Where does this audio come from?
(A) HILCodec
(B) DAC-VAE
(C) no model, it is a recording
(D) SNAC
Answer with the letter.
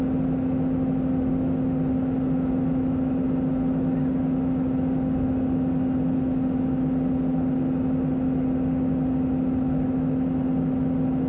C